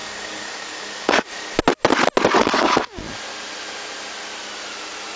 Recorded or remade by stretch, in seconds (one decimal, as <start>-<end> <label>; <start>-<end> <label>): 0.0-1.2 remade; 1.2-2.4 recorded; 2.4-3.0 remade; 3.0-5.2 recorded